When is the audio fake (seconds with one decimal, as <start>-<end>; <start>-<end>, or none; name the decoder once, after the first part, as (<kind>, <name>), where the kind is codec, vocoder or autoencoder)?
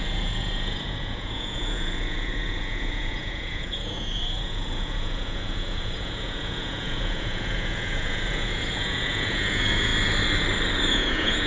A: 0.0-9.9 (vocoder, Vocos); 10.9-11.5